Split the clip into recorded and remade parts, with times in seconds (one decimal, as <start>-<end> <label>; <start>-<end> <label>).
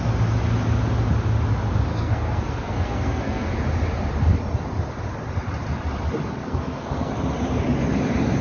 0.0-1.9 recorded; 1.9-3.5 remade; 3.5-6.4 recorded; 6.4-7.1 remade; 7.1-8.4 recorded